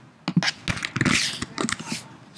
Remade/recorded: recorded